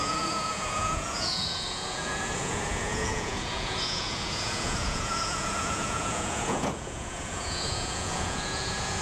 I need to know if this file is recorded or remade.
remade